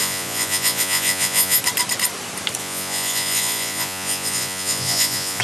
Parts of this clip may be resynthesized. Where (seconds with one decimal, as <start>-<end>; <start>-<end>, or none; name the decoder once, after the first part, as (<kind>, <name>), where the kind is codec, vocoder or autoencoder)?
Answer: 0.0-1.6 (vocoder, Vocos); 2.6-5.4